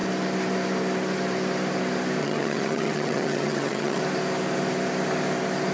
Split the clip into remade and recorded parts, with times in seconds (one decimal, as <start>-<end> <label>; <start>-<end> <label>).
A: 0.0-2.2 recorded; 2.2-4.0 remade; 4.0-5.7 recorded